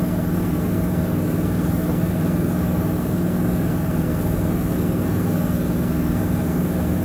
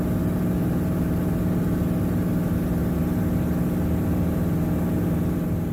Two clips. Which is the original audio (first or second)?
second